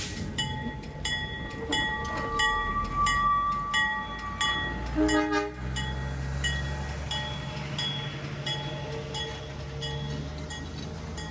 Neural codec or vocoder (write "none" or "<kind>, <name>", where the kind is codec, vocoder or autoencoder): none